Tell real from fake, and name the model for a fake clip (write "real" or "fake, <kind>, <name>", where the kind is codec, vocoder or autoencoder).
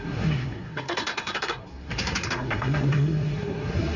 fake, codec, SNAC